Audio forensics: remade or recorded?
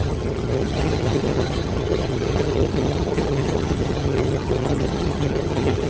remade